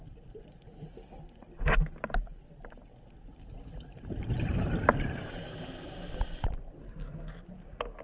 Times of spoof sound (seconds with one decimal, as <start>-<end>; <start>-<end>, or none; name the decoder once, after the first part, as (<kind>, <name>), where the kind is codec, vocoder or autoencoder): 6.8-7.3 (codec, SNAC)